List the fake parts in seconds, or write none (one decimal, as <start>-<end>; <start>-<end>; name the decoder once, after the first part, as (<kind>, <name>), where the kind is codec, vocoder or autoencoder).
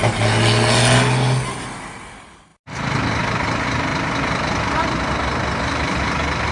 none